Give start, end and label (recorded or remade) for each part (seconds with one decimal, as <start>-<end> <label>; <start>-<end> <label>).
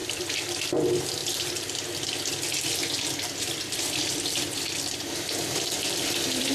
0.0-1.2 remade; 1.2-4.5 recorded; 4.5-6.5 remade